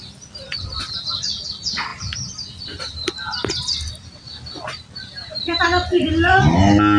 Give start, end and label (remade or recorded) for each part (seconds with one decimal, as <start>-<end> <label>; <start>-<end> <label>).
0.0-7.0 recorded